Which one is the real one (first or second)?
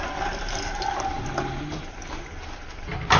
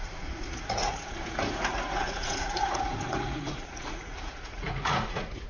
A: first